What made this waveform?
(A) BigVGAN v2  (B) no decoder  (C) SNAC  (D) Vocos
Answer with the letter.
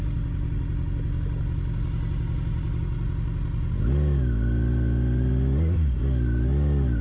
B